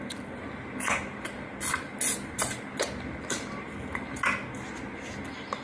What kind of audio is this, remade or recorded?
recorded